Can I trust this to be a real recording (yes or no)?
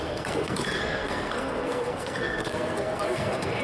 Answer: no